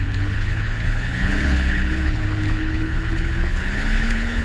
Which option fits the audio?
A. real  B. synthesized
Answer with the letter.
B